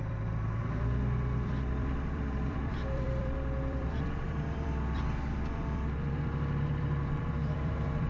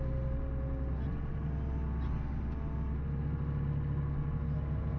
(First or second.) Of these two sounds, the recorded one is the second